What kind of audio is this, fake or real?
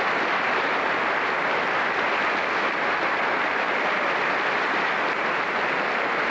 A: real